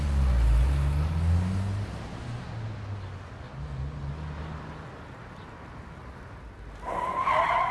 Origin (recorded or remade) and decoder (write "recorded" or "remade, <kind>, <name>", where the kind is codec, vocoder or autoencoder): recorded